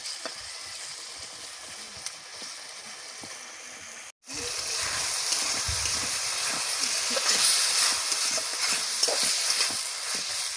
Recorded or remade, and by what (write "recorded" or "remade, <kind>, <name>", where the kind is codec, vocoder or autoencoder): recorded